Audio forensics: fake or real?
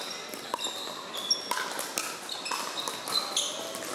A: real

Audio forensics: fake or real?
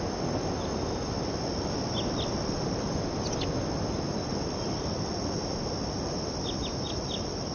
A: real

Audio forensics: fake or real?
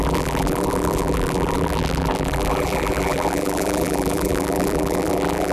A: fake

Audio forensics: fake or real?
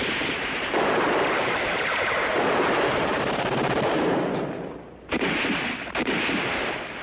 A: fake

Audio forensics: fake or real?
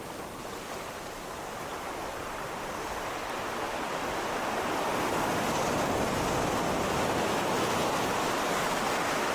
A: real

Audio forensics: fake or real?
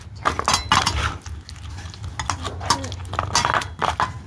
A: real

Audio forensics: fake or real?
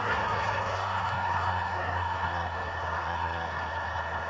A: fake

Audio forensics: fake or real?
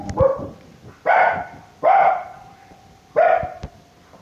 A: fake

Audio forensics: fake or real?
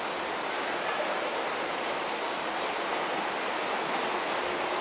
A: real